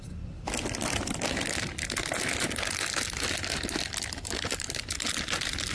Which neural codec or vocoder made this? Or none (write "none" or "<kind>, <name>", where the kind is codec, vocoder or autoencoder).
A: none